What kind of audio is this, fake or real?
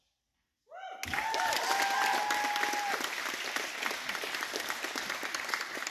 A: real